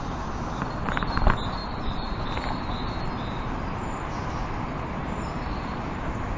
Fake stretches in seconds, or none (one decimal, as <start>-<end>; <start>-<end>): 1.6-2.2; 5.0-5.8